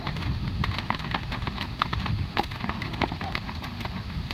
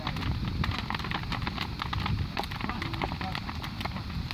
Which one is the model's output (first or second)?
first